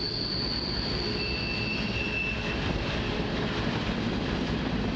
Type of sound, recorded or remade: recorded